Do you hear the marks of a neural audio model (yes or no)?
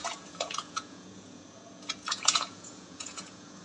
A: yes